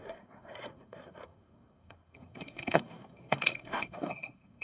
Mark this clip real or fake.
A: fake